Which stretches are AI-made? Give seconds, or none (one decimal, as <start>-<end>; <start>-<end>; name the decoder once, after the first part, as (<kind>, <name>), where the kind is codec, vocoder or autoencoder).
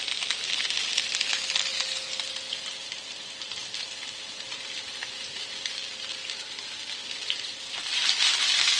0.0-1.7 (vocoder, BigVGAN v2); 2.8-8.8